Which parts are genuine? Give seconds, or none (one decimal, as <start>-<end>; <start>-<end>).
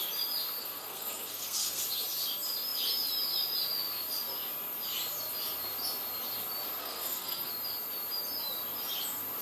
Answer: 0.0-0.6; 1.8-6.8; 7.5-9.4